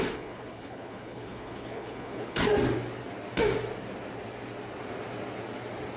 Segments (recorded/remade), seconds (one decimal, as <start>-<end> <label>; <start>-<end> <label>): 0.0-2.4 remade; 2.4-6.0 recorded